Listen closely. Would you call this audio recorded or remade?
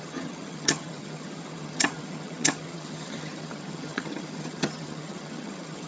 remade